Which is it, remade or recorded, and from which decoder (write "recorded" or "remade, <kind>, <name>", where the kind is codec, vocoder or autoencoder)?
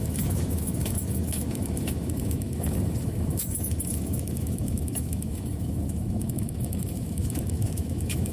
remade, autoencoder, DAC-VAE